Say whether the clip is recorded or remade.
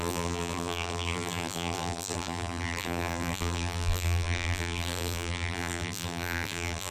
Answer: remade